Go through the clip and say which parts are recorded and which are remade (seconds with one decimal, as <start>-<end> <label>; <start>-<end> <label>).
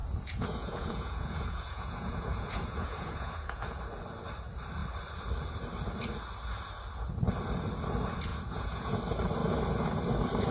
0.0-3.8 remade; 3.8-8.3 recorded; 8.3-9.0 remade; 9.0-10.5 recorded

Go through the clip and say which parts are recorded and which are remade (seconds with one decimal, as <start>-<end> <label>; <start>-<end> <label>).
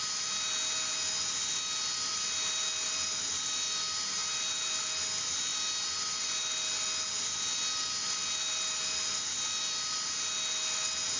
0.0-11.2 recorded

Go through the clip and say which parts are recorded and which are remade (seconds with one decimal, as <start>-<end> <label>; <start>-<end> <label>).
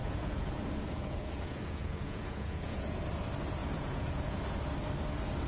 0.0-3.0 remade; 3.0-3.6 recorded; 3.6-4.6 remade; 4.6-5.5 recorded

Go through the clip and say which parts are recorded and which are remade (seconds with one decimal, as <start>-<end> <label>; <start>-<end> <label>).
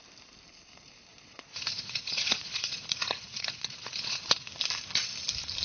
0.0-1.1 recorded; 1.1-4.5 remade; 4.5-5.6 recorded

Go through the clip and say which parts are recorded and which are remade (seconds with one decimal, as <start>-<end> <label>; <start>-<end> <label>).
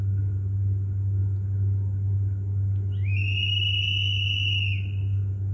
0.0-5.5 recorded